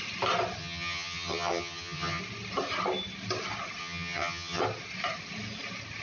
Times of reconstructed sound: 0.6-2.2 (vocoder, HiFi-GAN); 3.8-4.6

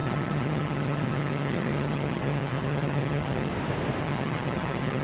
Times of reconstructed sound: 0.0-3.5 (vocoder, HiFi-GAN); 4.0-5.0

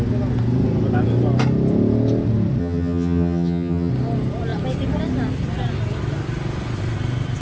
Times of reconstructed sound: 2.6-3.9 (vocoder, HiFi-GAN)